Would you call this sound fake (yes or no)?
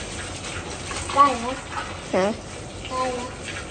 no